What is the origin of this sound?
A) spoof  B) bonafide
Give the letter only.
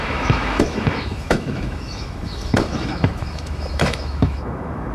A